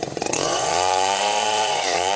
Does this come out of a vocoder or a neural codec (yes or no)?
yes